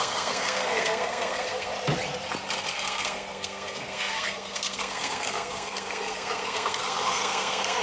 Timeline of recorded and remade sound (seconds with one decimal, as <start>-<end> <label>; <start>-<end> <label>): 0.0-1.7 remade; 1.7-2.7 recorded; 2.7-7.8 remade